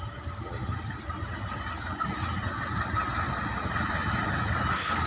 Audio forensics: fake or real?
real